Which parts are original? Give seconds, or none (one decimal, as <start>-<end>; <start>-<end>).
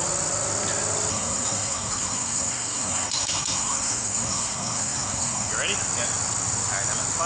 0.0-1.1; 5.5-7.3